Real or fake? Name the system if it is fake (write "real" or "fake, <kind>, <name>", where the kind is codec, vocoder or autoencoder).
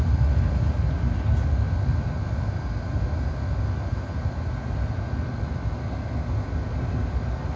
real